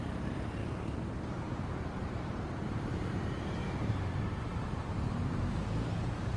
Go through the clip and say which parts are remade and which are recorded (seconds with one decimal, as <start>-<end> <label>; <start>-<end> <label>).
0.0-6.4 remade